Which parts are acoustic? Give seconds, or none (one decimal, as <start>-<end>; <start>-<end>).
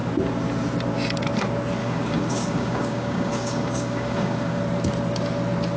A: 0.0-1.8; 4.6-5.8